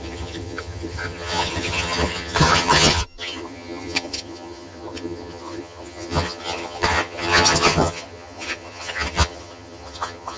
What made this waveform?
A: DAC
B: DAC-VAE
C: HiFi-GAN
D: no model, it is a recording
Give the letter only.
C